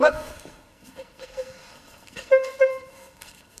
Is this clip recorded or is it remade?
remade